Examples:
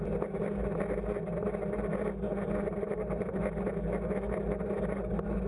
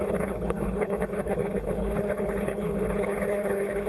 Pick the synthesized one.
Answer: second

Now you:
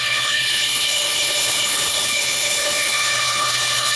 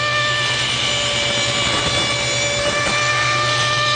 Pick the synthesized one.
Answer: first